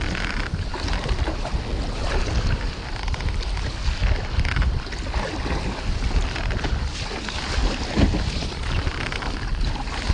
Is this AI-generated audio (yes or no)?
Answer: no